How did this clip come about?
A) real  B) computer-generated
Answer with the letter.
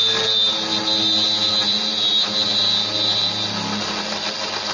A